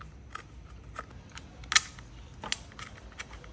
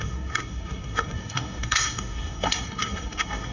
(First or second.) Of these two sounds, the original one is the first